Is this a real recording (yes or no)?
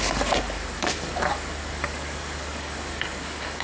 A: no